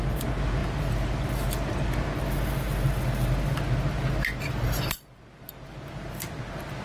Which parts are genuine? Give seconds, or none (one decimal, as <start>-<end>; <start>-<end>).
0.0-6.8